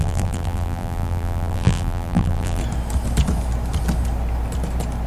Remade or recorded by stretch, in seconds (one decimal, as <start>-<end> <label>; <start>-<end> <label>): 0.0-2.6 remade; 2.6-5.1 recorded